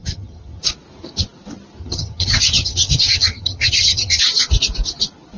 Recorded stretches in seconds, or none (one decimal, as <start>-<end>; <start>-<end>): 0.6-1.8; 4.2-5.4

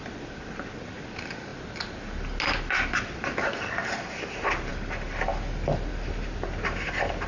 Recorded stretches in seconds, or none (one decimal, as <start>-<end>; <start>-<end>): 0.0-7.3

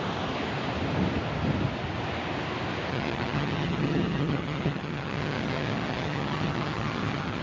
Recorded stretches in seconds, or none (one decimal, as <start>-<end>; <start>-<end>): 0.0-2.9

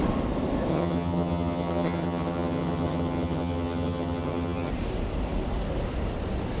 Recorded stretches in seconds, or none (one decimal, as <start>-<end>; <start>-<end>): 0.0-0.7; 4.7-6.6

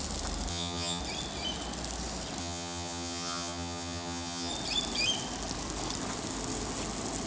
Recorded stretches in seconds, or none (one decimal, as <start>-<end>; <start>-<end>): 0.0-0.5; 1.0-2.4; 4.5-7.3